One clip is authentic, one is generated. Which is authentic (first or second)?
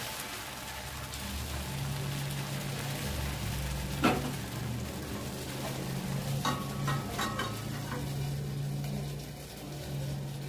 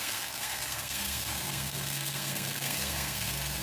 first